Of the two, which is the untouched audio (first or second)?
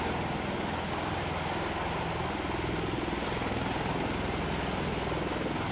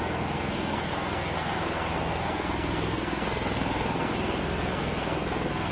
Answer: first